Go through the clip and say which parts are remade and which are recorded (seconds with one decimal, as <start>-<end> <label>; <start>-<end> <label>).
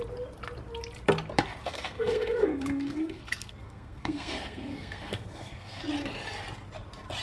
0.0-1.6 recorded; 1.6-5.8 remade; 5.8-7.2 recorded